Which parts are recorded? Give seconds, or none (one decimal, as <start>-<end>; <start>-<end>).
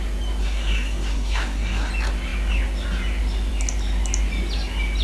0.0-0.4; 1.9-5.0